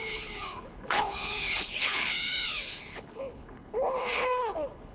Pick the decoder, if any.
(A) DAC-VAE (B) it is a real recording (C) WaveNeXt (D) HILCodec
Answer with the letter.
D